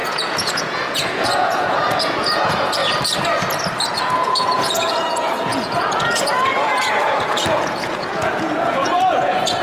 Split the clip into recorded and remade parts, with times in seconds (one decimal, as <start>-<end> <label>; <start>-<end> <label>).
0.0-2.8 remade; 2.8-3.9 recorded; 3.9-9.6 remade